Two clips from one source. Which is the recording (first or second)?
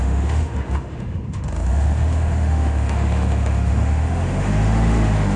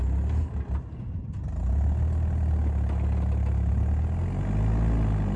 second